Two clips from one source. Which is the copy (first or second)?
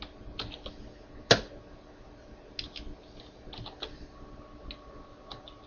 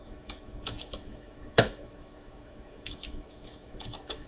second